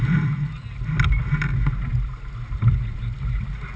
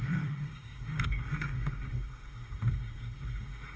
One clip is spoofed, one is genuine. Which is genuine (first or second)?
first